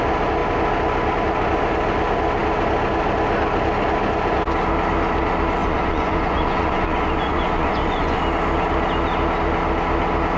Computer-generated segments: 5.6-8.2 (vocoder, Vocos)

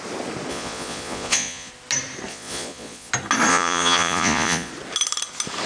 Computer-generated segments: 0.5-1.7 (vocoder, Vocos); 2.3-3.1; 3.5-4.7

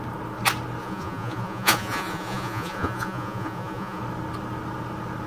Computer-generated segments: 0.8-4.0 (vocoder, Vocos)

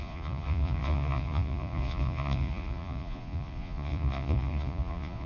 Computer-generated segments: 0.0-5.3 (vocoder, Vocos)